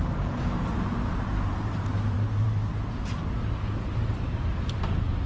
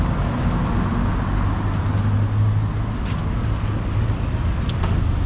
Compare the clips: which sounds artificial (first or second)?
first